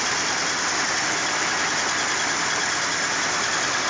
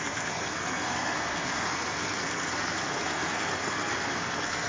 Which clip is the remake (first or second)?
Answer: second